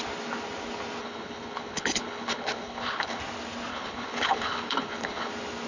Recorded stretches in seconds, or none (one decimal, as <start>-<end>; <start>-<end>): 0.0-1.0; 3.2-3.7; 5.3-5.7